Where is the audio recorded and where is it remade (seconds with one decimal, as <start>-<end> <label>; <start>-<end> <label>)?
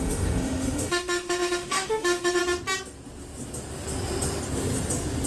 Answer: 0.0-2.4 remade; 2.4-5.3 recorded